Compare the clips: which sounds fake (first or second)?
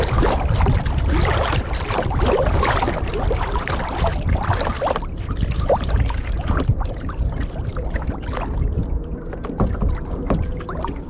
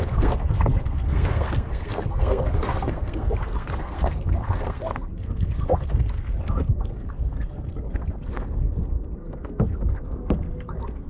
second